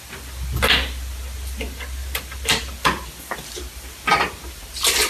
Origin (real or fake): real